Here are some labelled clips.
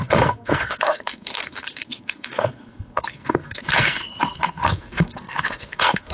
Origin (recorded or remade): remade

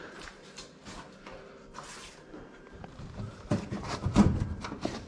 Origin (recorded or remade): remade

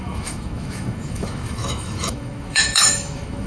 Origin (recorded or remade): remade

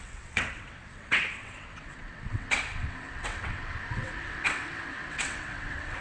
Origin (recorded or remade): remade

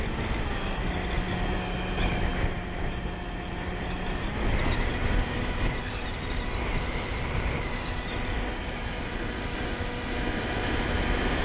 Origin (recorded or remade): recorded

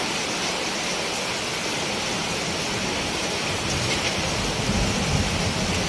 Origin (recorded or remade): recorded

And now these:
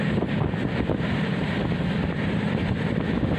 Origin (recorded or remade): recorded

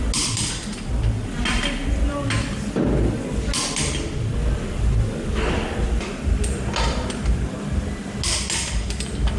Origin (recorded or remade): recorded